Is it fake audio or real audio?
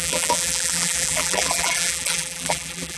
fake